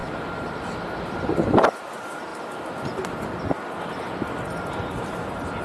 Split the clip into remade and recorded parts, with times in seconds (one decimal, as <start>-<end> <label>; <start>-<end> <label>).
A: 0.0-5.6 recorded